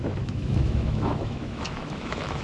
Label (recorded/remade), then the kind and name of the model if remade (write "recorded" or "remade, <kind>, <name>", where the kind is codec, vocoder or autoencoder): remade, autoencoder, DAC-VAE